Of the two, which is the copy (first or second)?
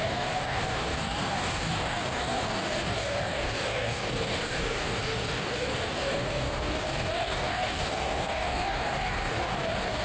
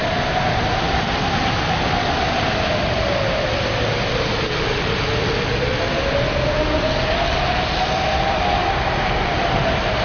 first